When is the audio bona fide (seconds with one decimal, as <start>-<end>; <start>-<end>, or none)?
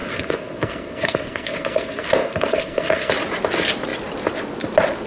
3.1-5.1